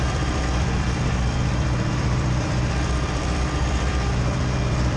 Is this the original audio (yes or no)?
no